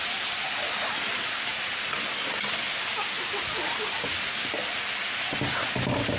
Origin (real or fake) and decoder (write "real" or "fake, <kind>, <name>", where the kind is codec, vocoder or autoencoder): real